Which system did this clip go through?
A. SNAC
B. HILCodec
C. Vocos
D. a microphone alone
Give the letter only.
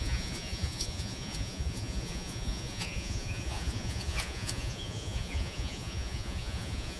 C